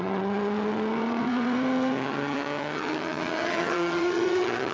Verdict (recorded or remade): remade